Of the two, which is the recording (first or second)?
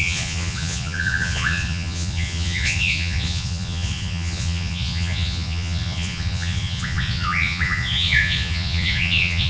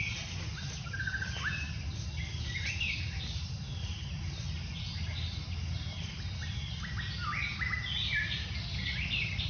second